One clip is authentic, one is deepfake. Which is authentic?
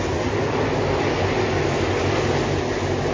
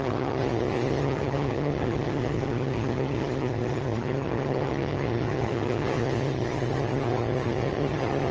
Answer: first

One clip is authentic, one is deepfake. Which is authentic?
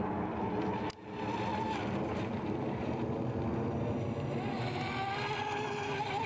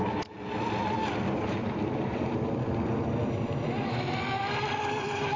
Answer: first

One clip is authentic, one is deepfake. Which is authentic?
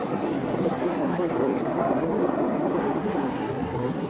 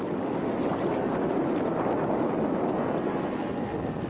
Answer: second